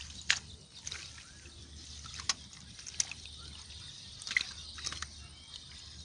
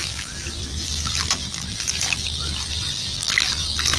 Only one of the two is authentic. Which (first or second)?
first